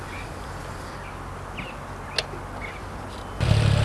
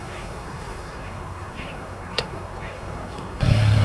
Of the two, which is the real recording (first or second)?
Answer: first